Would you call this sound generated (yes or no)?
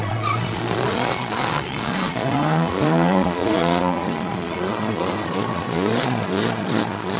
yes